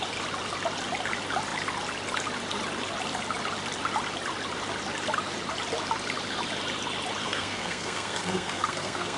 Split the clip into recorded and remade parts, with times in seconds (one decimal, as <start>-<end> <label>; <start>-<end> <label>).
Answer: 0.0-7.2 recorded; 7.2-9.2 remade